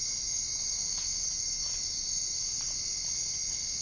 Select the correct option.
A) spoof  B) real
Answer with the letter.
B